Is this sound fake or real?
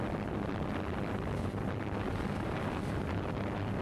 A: real